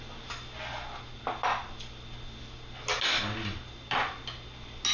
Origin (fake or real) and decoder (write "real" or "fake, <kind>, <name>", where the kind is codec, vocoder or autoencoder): real